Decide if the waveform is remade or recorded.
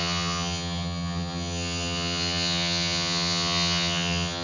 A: remade